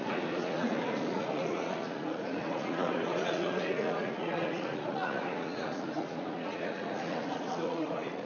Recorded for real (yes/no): no